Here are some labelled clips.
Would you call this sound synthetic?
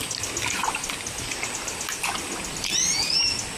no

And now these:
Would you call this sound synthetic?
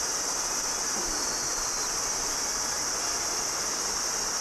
no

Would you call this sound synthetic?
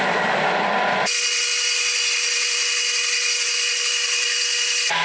no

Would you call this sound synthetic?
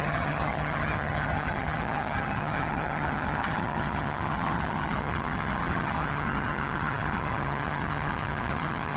yes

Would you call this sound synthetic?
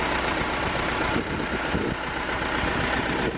no